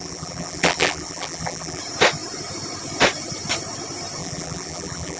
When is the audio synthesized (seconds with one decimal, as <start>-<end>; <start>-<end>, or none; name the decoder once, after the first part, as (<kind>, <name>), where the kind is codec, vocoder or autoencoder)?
0.0-1.8 (vocoder, BigVGAN v2); 4.2-5.2

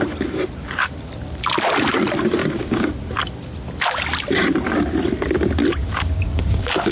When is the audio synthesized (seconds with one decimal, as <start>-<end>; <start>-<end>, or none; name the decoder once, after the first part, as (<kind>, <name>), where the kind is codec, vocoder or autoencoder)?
2.4-2.9 (codec, DAC); 5.8-6.9

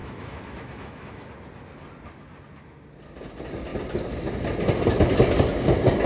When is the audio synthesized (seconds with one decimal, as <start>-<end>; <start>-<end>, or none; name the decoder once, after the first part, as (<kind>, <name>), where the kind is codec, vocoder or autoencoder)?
0.0-1.3 (autoencoder, DAC-VAE)

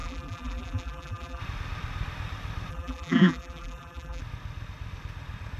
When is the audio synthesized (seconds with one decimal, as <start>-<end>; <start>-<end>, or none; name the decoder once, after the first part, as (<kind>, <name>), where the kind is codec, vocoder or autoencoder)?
0.0-1.4 (vocoder, BigVGAN v2); 2.7-4.2

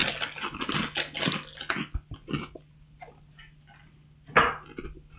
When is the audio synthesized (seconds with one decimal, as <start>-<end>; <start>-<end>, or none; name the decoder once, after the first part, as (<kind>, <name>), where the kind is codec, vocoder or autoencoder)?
none